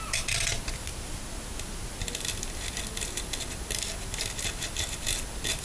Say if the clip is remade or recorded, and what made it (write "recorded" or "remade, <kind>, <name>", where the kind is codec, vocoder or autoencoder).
recorded